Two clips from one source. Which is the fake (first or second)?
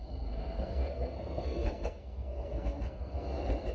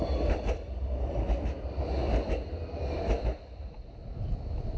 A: first